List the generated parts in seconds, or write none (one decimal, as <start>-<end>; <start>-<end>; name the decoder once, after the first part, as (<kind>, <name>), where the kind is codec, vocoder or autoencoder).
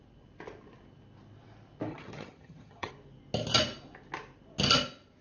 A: 1.9-2.9 (vocoder, HiFi-GAN)